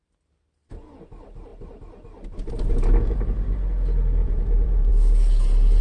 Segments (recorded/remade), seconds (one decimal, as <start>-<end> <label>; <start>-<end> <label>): 0.0-4.2 recorded; 4.2-4.9 remade; 4.9-5.8 recorded